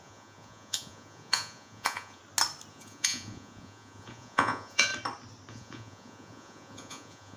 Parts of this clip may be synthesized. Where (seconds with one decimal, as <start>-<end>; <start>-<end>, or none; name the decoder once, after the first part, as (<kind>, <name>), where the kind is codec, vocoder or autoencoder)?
0.0-2.2 (vocoder, Vocos); 2.7-4.9; 5.5-7.4